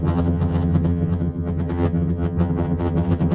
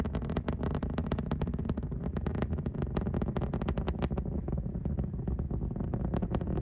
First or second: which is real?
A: second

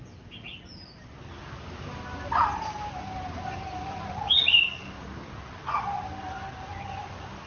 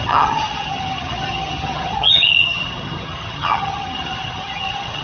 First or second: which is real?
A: first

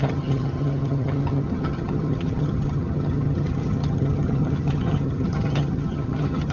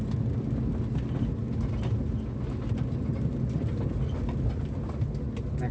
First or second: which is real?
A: second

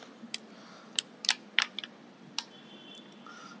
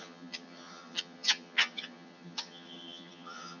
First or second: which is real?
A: first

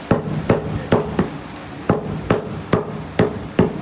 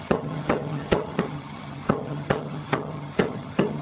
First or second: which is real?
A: first